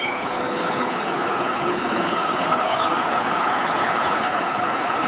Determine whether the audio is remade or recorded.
remade